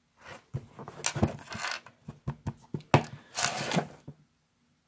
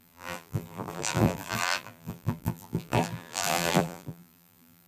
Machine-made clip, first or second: second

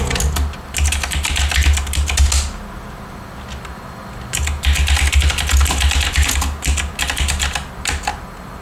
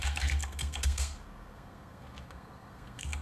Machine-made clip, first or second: second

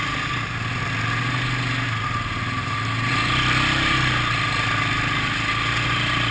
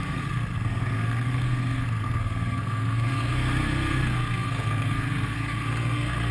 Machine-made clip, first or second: second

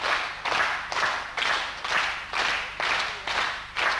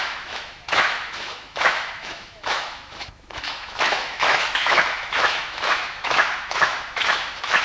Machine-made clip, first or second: second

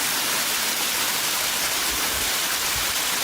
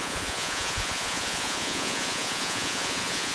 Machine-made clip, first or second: second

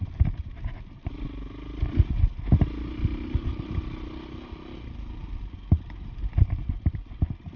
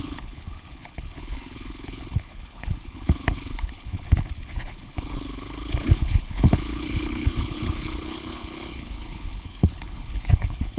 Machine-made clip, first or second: second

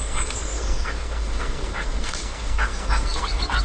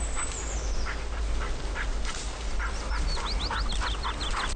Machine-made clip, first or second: first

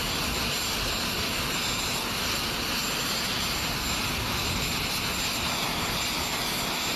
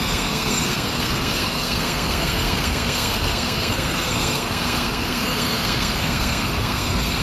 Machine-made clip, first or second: second